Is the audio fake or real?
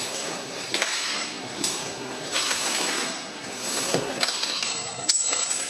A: fake